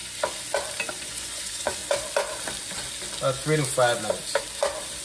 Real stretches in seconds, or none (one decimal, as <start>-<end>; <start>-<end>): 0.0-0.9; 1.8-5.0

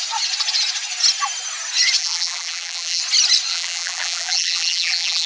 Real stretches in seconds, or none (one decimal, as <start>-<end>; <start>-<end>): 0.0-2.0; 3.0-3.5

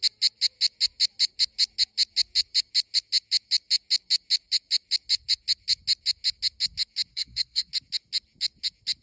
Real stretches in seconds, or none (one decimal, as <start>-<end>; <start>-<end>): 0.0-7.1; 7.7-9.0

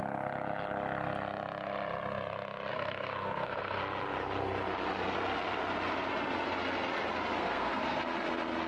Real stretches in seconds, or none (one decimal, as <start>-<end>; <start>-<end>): 0.0-2.7; 3.8-7.4; 8.0-8.7

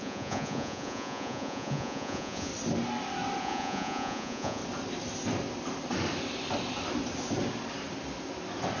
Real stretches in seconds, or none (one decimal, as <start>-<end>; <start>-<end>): 2.5-3.4; 4.6-8.8